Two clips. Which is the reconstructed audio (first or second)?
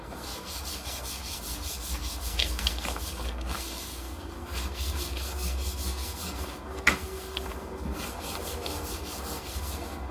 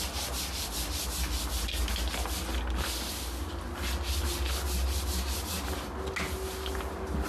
first